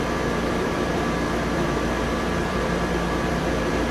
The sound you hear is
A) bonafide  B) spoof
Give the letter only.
B